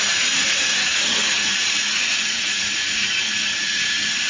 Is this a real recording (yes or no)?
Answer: no